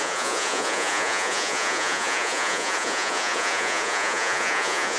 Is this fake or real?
fake